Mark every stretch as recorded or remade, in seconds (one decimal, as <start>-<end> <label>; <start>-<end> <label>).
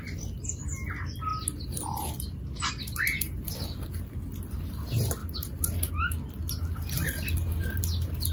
0.0-8.3 recorded